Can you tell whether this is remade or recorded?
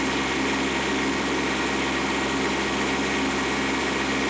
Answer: recorded